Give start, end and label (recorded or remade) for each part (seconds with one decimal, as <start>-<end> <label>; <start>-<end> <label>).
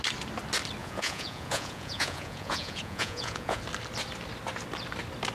0.0-0.8 recorded; 0.8-3.6 remade; 3.6-5.3 recorded